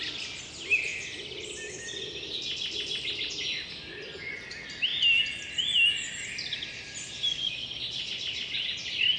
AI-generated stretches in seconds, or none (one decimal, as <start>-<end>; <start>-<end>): 7.3-8.1